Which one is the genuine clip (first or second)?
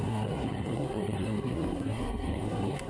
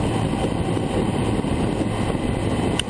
second